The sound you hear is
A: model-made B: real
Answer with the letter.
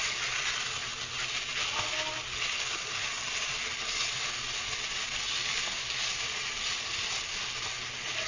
B